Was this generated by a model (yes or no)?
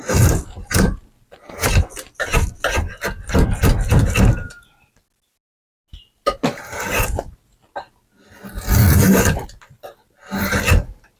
no